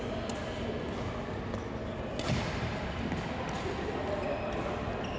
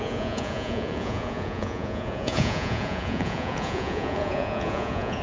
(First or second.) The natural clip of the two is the first